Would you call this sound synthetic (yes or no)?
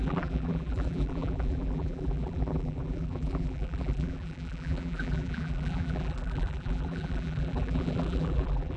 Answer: yes